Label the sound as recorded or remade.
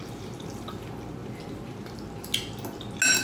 recorded